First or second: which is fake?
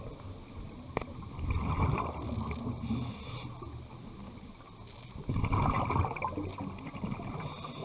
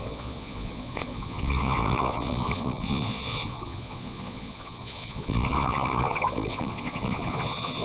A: second